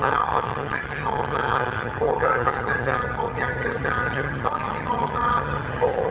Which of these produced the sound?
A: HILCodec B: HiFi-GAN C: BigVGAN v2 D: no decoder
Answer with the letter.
B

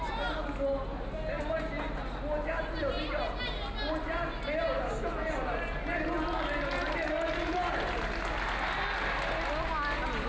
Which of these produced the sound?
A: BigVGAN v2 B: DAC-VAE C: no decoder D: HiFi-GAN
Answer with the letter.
C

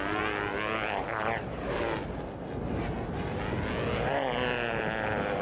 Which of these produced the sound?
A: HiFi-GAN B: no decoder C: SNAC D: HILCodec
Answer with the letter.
B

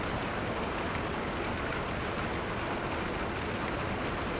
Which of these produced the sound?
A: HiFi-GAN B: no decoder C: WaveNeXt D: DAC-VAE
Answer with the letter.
B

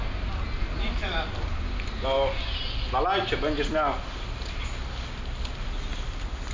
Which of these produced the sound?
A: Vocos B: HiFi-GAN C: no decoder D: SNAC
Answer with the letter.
C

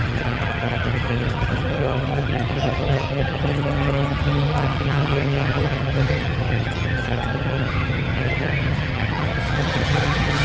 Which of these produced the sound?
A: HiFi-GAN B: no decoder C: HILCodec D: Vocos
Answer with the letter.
A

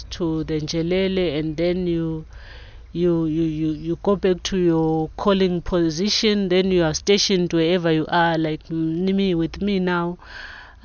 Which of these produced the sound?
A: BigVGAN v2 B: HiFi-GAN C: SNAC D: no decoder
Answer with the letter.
D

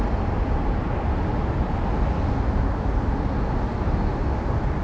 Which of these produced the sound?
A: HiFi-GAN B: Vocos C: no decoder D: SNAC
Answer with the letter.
C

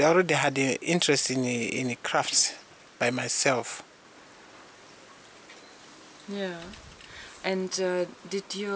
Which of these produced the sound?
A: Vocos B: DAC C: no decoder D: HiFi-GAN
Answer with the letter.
C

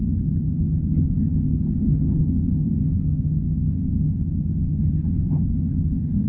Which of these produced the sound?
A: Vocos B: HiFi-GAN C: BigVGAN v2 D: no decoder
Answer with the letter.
B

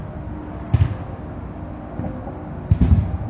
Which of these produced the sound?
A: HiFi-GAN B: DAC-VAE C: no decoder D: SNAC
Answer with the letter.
C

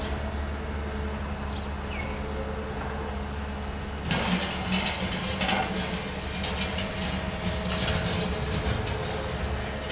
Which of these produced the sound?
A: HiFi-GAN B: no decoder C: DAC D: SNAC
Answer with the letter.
B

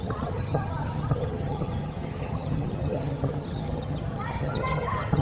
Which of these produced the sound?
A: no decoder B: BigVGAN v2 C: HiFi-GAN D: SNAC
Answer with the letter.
C